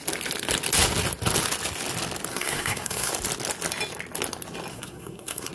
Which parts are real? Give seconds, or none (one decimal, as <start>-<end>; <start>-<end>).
0.0-2.3; 3.1-4.7